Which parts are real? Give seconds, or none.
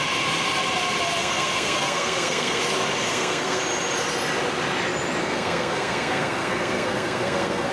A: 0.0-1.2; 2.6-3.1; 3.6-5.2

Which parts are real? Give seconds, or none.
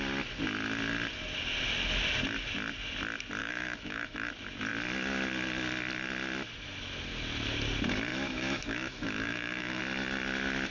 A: 0.0-3.4; 4.3-8.1; 9.8-10.7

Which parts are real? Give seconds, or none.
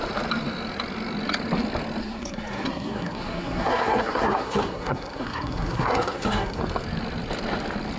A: 0.0-2.0; 6.6-8.0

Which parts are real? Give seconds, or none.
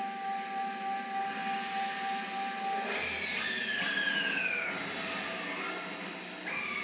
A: 0.0-6.8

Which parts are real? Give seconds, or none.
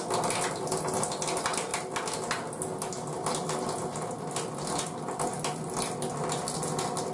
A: 0.0-7.1